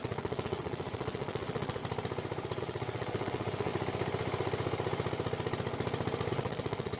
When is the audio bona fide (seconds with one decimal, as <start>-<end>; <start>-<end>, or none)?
1.8-2.6; 3.7-6.3